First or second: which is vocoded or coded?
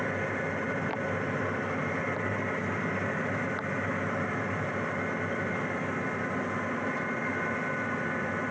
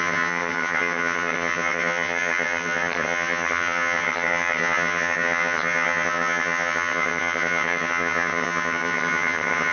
second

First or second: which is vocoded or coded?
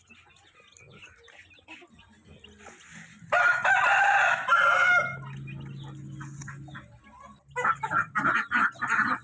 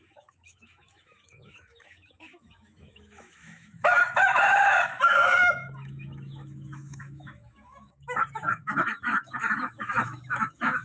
second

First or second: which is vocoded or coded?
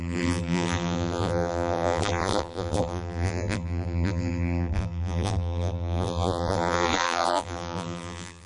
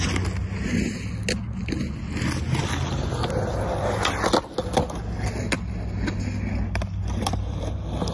first